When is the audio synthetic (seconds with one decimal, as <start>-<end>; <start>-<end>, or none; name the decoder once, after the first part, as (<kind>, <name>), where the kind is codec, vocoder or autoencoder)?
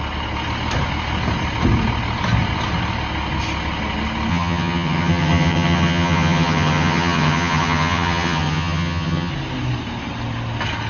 4.3-9.3 (vocoder, HiFi-GAN)